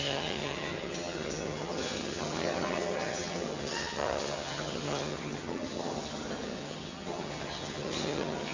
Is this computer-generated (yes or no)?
yes